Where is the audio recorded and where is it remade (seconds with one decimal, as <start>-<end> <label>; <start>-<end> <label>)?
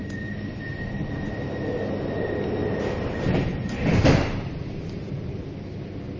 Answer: 0.0-1.3 remade; 1.3-2.6 recorded; 2.6-5.5 remade; 5.5-6.2 recorded